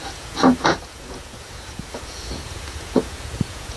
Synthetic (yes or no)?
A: yes